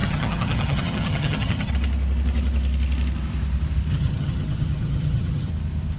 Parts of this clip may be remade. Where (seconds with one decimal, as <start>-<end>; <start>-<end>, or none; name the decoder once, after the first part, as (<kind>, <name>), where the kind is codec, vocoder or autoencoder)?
0.0-1.7 (vocoder, HiFi-GAN); 3.9-5.5